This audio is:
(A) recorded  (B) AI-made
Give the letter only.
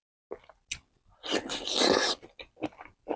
A